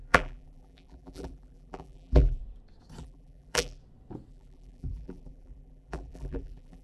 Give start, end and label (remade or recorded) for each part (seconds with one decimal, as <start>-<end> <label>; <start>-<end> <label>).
0.0-2.4 remade; 2.4-3.0 recorded; 3.0-3.8 remade; 3.8-4.3 recorded; 4.3-6.8 remade

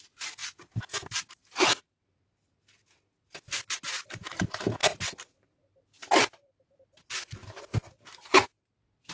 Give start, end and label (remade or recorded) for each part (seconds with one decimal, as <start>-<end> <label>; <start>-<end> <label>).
0.0-0.4 recorded; 0.4-2.1 remade; 2.1-7.4 recorded; 7.4-8.2 remade; 8.2-9.1 recorded

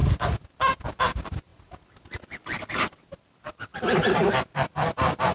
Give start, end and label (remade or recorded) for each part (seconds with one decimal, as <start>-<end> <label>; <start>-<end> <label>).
0.0-3.7 recorded; 3.7-5.3 remade

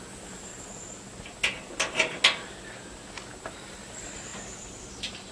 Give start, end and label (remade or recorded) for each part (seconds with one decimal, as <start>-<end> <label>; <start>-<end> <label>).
0.0-0.5 remade; 0.5-3.7 recorded; 3.7-5.3 remade